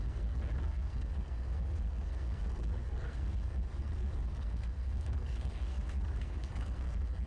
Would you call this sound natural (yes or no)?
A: no